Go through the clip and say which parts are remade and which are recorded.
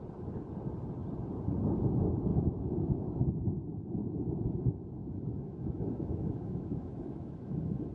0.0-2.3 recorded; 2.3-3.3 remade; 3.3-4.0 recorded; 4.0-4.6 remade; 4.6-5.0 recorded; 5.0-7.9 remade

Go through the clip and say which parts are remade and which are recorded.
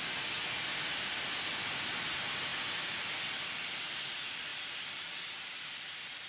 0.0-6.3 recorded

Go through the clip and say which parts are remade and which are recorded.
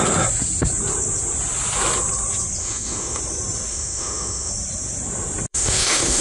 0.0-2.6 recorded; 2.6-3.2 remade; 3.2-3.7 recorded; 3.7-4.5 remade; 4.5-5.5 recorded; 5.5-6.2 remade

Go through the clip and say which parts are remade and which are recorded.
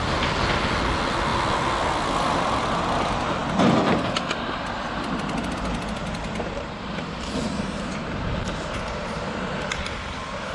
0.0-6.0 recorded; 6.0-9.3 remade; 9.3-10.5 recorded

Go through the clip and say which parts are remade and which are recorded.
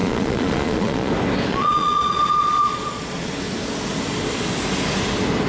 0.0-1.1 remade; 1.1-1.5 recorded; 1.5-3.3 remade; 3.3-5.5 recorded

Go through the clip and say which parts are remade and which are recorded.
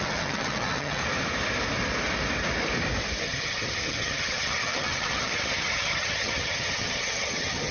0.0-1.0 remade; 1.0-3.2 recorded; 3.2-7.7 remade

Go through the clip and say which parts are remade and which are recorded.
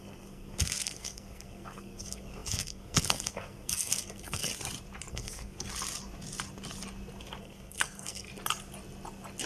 0.0-4.5 remade; 4.5-5.1 recorded; 5.1-5.7 remade; 5.7-7.4 recorded; 7.4-8.3 remade; 8.3-9.5 recorded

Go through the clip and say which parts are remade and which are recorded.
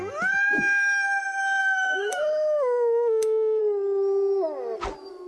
0.0-1.6 recorded; 1.6-3.6 remade; 3.6-5.3 recorded